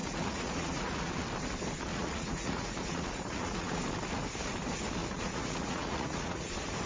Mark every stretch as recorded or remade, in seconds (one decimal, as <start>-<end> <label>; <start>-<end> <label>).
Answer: 0.0-1.1 remade; 1.1-1.9 recorded; 1.9-3.8 remade; 3.8-5.0 recorded; 5.0-6.4 remade; 6.4-6.9 recorded